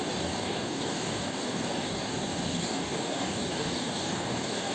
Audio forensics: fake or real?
fake